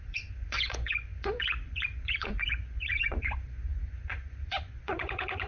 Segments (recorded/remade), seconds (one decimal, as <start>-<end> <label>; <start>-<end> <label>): 0.0-5.5 remade